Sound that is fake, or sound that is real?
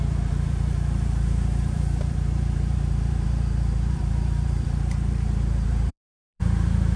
fake